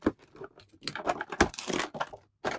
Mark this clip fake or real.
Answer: real